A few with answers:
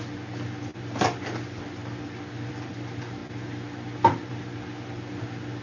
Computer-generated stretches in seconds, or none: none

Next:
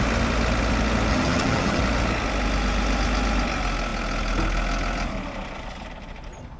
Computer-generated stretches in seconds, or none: 1.1-1.8 (vocoder, HiFi-GAN)

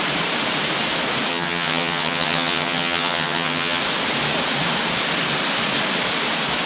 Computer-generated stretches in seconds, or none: 1.3-3.8 (vocoder, HiFi-GAN)